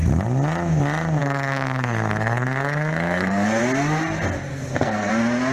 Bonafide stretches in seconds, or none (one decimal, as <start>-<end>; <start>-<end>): 0.0-1.2; 3.6-4.5; 5.1-5.5